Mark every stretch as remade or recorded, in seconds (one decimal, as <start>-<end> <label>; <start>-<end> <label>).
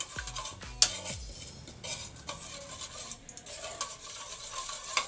0.0-5.1 recorded